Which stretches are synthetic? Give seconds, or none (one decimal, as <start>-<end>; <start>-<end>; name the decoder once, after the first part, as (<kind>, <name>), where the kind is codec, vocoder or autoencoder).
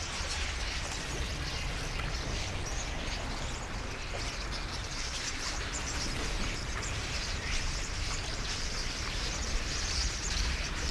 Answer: 0.0-1.3 (vocoder, BigVGAN v2); 4.8-10.9